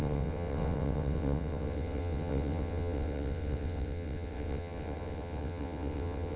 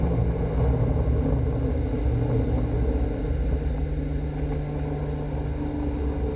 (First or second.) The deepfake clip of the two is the first